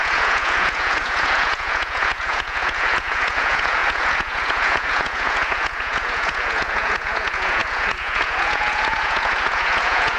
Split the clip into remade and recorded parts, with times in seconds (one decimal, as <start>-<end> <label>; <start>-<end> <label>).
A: 0.0-10.2 remade